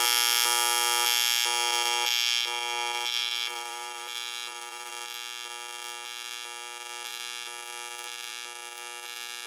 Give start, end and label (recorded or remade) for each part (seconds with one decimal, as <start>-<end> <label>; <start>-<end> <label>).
0.0-3.2 recorded; 3.2-4.9 remade; 4.9-9.5 recorded